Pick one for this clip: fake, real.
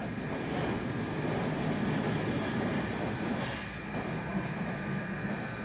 real